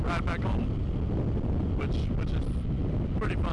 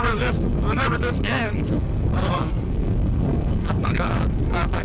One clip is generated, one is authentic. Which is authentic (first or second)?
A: first